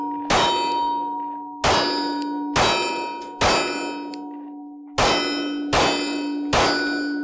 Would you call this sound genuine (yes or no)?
yes